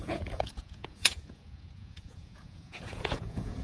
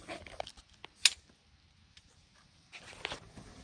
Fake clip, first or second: first